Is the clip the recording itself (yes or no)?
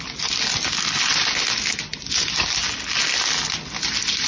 yes